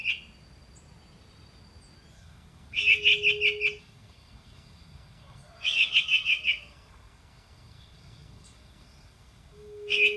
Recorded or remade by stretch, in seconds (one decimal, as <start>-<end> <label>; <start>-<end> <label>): 0.0-2.1 recorded; 2.1-3.1 remade; 3.1-3.8 recorded; 3.8-10.2 remade